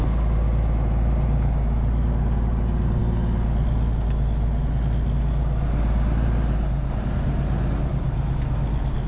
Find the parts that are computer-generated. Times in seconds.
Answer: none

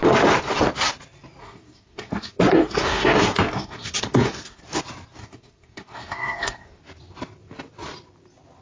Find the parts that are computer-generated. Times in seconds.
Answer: 1.4-4.6 (codec, SNAC); 5.2-6.8